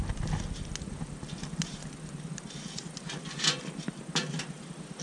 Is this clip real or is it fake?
real